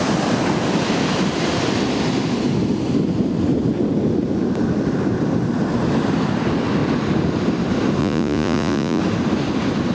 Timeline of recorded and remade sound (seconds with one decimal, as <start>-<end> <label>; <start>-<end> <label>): 0.0-8.0 recorded; 8.0-9.0 remade; 9.0-9.9 recorded